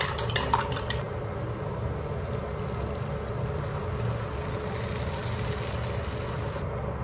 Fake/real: real